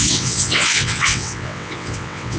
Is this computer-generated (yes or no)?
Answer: yes